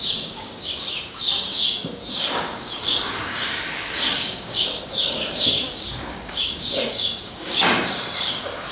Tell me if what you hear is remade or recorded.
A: remade